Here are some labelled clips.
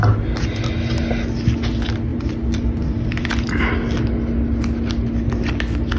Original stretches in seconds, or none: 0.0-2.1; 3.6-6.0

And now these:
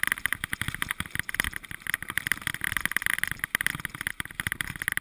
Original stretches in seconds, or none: 0.0-5.0

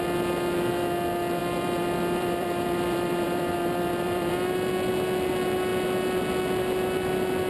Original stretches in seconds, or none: 0.0-1.4; 4.3-7.5

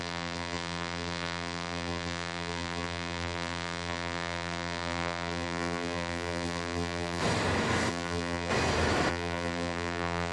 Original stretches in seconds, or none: 7.2-7.9; 8.5-9.1

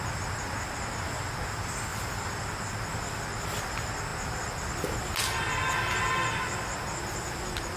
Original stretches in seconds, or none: 0.0-1.9; 2.4-7.8